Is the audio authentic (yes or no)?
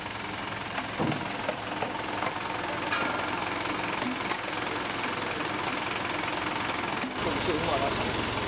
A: yes